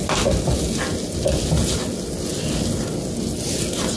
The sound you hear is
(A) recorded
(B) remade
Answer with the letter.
A